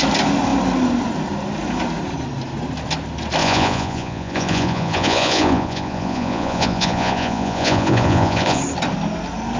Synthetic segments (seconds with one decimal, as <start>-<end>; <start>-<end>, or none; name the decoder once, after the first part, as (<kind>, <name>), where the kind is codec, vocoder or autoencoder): 3.4-8.6 (vocoder, Vocos)